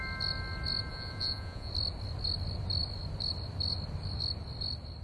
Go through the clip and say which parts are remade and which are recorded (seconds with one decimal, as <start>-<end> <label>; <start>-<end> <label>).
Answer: 0.0-0.9 recorded; 0.9-1.7 remade; 1.7-5.0 recorded